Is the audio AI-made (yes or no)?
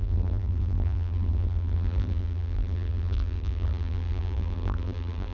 yes